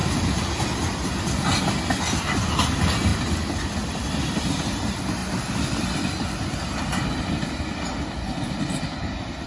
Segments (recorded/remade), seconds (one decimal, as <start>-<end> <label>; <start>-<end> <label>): 0.0-1.6 remade; 1.6-3.1 recorded; 3.1-4.1 remade; 4.1-5.2 recorded; 5.2-6.7 remade; 6.7-9.5 recorded